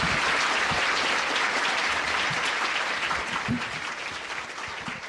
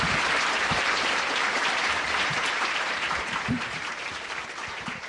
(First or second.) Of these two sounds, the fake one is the second